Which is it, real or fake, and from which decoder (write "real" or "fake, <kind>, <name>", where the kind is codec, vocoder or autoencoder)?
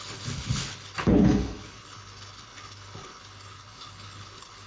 fake, codec, HILCodec